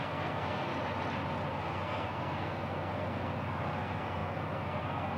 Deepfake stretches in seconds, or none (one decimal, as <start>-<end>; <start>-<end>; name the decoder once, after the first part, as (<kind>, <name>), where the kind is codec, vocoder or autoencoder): 0.0-0.7 (codec, SNAC); 1.5-5.2